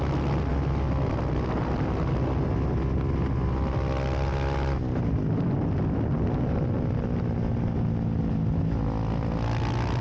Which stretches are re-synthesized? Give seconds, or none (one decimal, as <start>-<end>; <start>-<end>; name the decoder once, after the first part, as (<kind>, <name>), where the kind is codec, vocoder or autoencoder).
none